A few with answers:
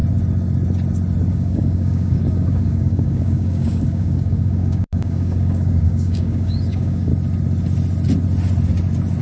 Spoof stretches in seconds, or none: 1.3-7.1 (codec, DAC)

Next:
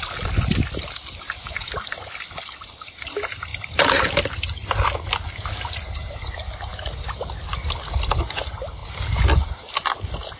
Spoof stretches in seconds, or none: none

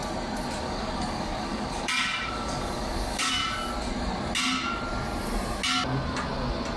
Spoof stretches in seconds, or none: 0.6-3.4 (codec, DAC)

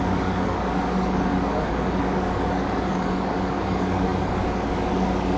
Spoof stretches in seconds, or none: 0.0-5.4 (codec, DAC)

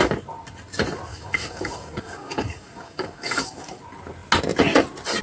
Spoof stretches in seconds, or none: 1.1-3.8 (codec, DAC)